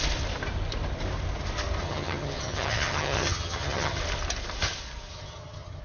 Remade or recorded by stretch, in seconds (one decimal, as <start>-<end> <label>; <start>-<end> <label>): 0.0-1.8 recorded; 1.8-4.0 remade; 4.0-5.1 recorded; 5.1-5.8 remade